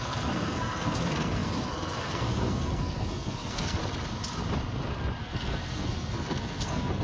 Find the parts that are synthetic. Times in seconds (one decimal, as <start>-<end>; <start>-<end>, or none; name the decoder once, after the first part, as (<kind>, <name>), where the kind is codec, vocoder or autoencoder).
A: 0.0-3.8 (codec, SNAC); 5.2-7.0

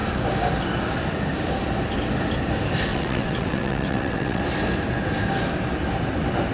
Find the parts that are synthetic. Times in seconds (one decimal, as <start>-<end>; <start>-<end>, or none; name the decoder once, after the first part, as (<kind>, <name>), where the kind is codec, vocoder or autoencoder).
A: 2.9-4.4 (vocoder, WaveNeXt)

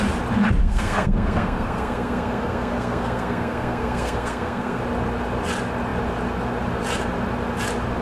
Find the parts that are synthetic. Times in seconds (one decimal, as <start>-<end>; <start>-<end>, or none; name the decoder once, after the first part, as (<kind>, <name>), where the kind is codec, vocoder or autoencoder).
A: 0.6-4.8 (codec, SNAC)

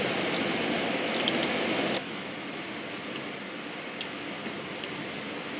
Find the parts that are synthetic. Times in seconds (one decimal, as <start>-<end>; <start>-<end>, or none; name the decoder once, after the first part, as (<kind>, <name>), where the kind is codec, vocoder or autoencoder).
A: 2.0-2.6 (autoencoder, DAC-VAE)

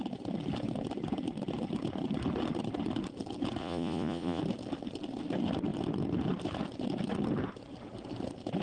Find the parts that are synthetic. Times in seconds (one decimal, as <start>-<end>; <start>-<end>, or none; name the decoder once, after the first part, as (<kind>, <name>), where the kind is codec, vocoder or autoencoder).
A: 3.6-4.4 (vocoder, Vocos)